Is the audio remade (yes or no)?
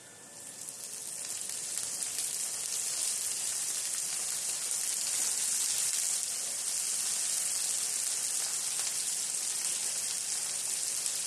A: no